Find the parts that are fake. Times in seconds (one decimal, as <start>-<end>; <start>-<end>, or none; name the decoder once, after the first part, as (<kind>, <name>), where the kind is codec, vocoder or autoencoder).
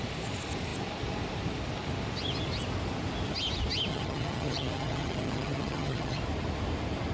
3.9-6.2 (vocoder, HiFi-GAN)